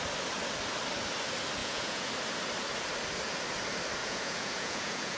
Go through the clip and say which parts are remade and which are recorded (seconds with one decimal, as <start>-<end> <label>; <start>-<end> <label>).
0.0-1.6 recorded; 1.6-2.1 remade; 2.1-4.0 recorded; 4.0-5.2 remade